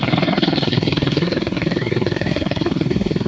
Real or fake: fake